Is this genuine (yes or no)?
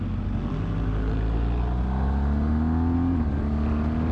yes